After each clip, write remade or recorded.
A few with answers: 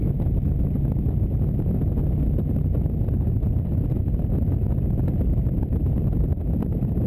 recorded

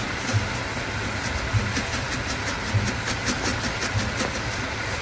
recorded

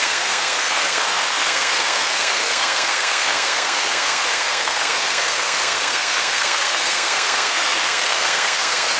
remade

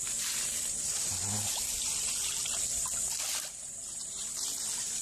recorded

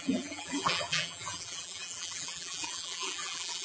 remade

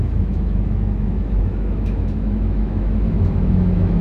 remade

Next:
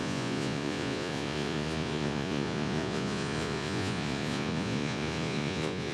remade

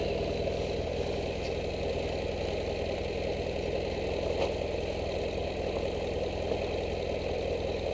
recorded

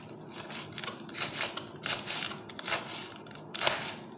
recorded